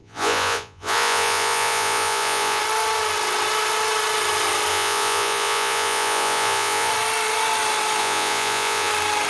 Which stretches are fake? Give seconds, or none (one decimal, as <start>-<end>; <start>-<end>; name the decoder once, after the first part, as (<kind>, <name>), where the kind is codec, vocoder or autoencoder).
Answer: 0.0-2.6 (vocoder, Vocos); 4.7-6.9; 8.0-8.9